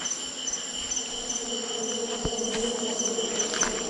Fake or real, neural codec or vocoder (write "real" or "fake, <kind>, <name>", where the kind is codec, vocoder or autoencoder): real